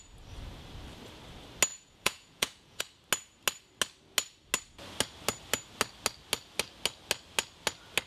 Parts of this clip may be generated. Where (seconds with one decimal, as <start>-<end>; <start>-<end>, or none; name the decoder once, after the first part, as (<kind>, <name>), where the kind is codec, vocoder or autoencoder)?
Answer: 1.7-2.8 (vocoder, Vocos)